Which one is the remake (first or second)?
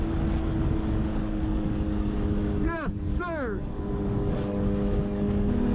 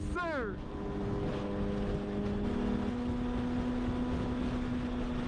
first